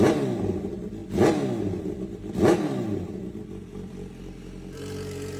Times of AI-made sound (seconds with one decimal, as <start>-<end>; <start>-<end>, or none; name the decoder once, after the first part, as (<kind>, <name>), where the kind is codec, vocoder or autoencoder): none